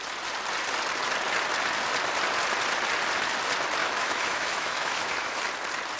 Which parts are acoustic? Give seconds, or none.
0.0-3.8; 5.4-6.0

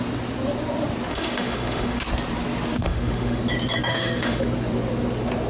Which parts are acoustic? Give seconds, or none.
0.0-1.1; 2.0-2.8; 3.4-3.9; 4.4-5.5

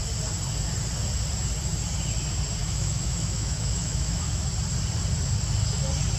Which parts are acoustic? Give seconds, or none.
0.0-2.6; 4.4-6.2